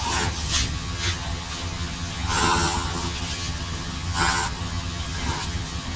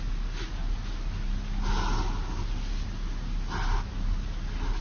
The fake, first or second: first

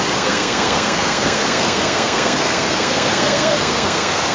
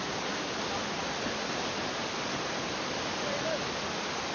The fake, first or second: first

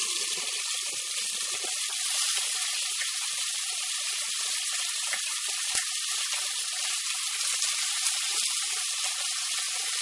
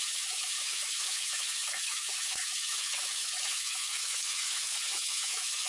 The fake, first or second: second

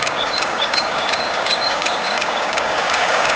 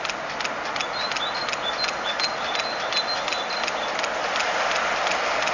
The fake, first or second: first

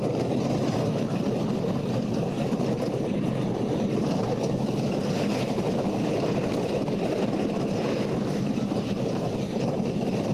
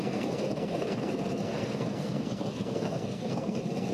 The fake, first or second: second